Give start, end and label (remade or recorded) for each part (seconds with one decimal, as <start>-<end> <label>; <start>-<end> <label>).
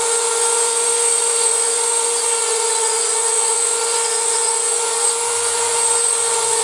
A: 0.0-6.6 remade